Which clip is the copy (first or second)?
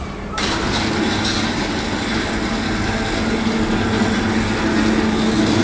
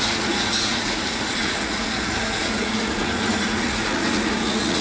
second